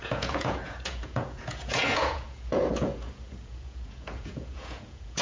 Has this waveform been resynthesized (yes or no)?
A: yes